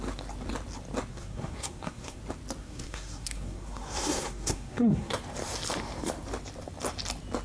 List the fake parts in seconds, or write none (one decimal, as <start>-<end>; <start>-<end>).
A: 1.1-2.2; 2.6-5.2